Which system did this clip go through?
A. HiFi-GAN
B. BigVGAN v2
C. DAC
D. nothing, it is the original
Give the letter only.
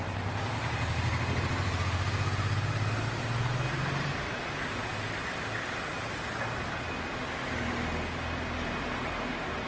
D